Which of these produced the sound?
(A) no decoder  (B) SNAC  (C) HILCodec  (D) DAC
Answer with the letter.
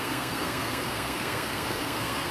B